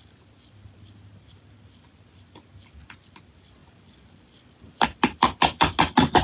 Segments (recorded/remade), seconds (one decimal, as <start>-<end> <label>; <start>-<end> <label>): 0.0-6.2 recorded